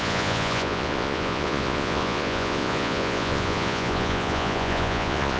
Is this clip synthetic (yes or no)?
yes